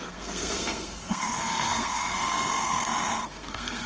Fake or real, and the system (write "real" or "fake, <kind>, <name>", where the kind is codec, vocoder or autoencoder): fake, codec, SNAC